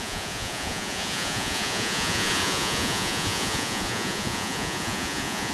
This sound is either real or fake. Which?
fake